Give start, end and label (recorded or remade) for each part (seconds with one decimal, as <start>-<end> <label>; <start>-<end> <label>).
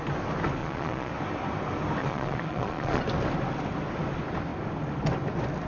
0.0-0.6 recorded; 0.6-1.1 remade; 1.1-2.0 recorded; 2.0-3.0 remade; 3.0-5.7 recorded